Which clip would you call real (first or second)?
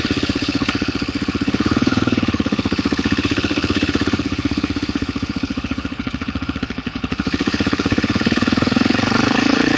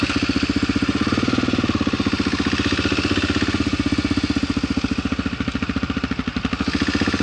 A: second